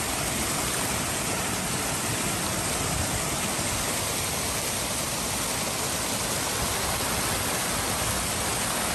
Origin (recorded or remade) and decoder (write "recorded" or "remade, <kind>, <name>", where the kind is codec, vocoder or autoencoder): recorded